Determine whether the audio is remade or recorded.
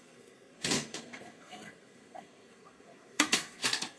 remade